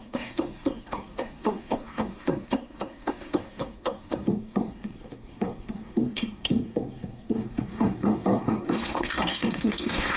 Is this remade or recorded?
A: remade